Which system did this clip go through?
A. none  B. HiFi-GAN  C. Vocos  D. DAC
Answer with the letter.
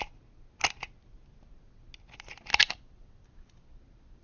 A